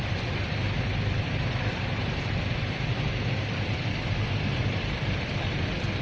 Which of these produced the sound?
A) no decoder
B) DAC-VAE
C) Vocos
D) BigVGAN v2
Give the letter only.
D